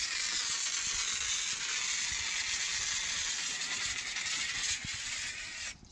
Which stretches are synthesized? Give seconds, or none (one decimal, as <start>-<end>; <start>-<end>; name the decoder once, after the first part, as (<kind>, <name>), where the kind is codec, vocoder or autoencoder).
none